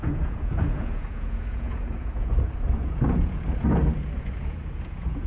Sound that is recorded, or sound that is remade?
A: remade